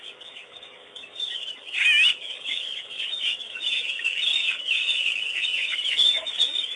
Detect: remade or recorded remade